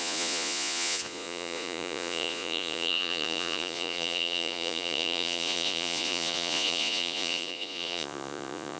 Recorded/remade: remade